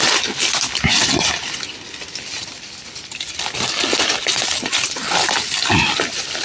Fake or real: real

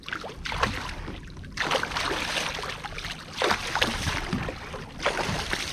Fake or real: real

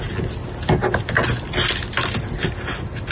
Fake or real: real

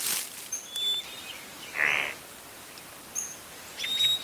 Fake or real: real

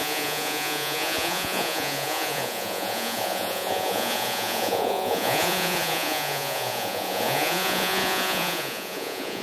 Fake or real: fake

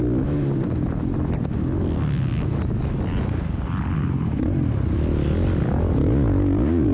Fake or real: real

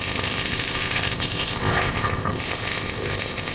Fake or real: fake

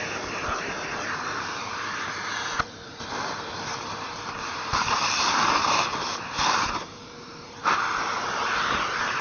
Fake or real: fake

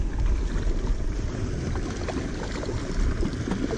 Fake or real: real